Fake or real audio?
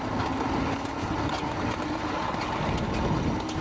real